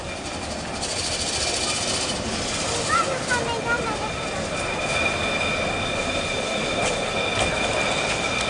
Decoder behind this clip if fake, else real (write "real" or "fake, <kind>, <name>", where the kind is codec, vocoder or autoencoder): real